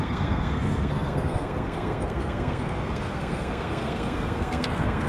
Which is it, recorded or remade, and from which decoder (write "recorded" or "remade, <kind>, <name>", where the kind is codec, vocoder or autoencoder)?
remade, codec, SNAC